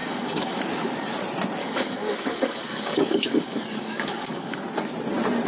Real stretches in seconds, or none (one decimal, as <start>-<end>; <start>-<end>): 0.6-1.6; 4.6-5.5